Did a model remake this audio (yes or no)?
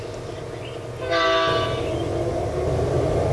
no